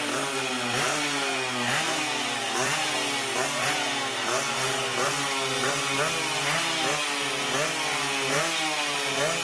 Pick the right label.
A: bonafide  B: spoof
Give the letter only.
A